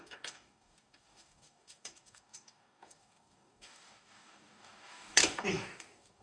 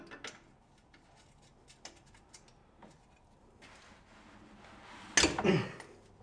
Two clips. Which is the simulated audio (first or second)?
first